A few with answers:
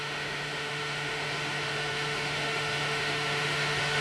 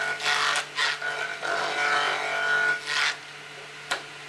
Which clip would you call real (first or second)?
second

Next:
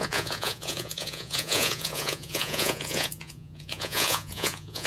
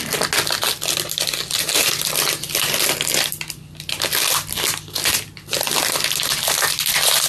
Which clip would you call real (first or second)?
second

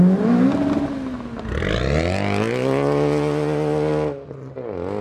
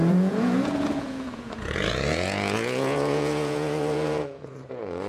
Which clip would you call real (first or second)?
first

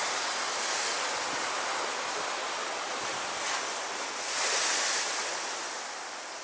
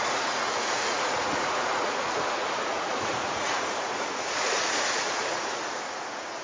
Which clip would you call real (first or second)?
first